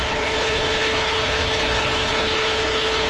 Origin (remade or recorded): remade